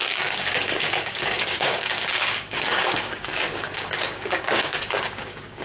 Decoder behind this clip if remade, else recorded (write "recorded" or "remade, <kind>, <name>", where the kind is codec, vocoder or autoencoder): remade, codec, DAC